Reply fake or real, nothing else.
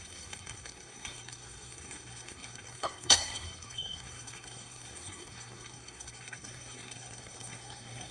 fake